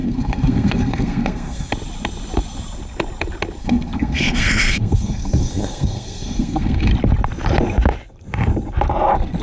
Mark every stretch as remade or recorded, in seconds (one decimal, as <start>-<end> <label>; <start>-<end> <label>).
0.0-1.7 remade; 1.7-3.6 recorded; 3.6-6.9 remade; 6.9-9.4 recorded